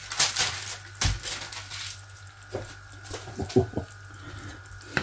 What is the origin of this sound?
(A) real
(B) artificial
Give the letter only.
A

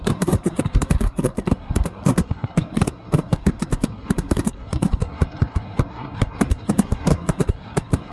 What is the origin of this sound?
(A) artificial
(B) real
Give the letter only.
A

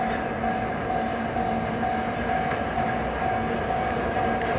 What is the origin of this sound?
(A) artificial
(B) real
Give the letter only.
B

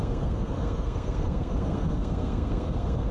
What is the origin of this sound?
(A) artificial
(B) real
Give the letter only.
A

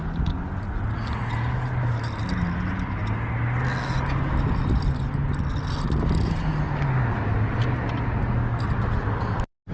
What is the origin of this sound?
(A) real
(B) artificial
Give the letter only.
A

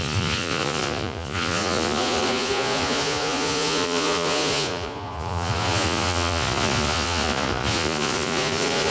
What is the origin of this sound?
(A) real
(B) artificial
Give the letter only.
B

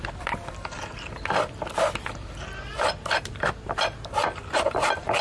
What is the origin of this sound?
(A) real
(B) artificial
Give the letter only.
B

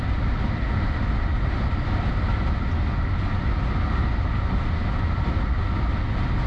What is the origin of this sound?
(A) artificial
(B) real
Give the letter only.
B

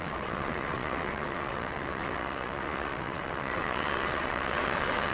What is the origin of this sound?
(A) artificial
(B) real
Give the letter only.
A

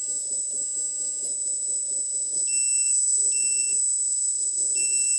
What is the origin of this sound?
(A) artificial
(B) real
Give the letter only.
B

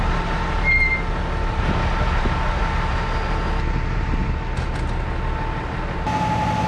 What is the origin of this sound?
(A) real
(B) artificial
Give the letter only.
A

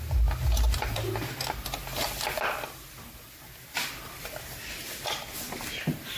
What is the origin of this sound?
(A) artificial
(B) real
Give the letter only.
B